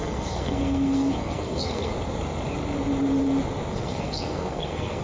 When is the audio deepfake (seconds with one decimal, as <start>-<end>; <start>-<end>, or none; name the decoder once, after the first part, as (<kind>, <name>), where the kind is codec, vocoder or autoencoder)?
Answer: 0.0-1.9 (codec, SNAC); 3.7-5.0